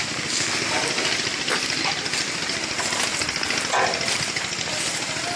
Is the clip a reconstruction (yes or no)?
no